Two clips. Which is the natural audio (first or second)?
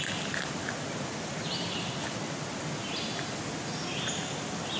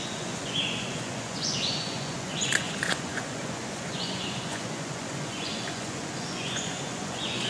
first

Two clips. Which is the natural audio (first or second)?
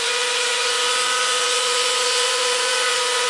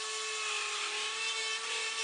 second